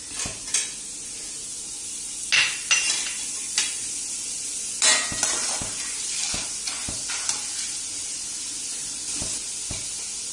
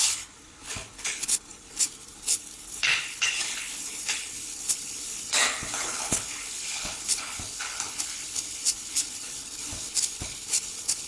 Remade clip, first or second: second